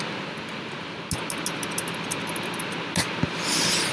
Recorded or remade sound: recorded